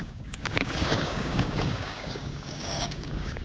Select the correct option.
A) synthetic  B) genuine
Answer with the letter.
A